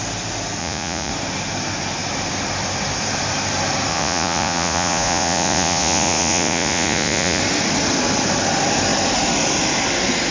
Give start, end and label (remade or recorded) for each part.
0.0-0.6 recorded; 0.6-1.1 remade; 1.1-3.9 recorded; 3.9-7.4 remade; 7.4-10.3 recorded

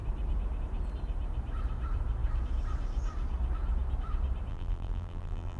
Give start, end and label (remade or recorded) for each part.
0.0-4.5 recorded; 4.5-5.6 remade

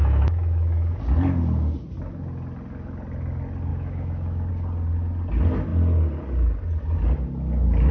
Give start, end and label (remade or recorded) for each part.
0.0-1.0 remade; 1.0-3.7 recorded; 3.7-4.5 remade; 4.5-7.9 recorded

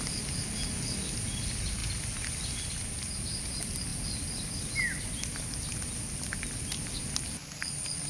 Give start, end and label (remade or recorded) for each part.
0.0-8.1 recorded

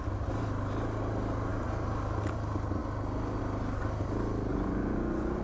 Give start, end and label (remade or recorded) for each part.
0.0-4.5 recorded; 4.5-5.4 remade